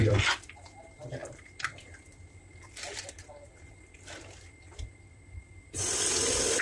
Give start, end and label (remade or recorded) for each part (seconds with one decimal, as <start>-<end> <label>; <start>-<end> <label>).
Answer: 0.0-6.6 remade

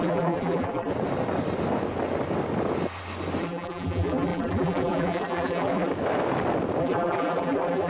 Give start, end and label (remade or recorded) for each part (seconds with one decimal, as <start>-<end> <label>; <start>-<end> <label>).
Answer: 0.0-0.9 remade; 0.9-3.4 recorded; 3.4-5.9 remade; 5.9-6.8 recorded; 6.8-7.9 remade